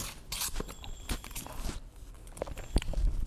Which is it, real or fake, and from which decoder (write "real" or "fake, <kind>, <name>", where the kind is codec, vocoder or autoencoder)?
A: fake, vocoder, BigVGAN v2